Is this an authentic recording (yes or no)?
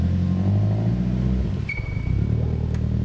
yes